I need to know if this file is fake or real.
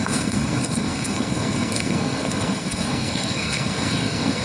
fake